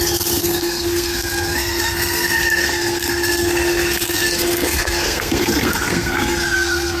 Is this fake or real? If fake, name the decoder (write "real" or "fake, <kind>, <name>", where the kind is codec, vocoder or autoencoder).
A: fake, codec, SNAC